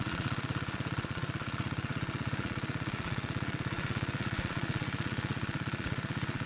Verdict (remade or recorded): remade